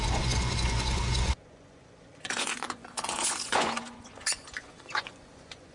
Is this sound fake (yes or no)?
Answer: yes